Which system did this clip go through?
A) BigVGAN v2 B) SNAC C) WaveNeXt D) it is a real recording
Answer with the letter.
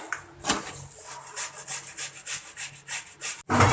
D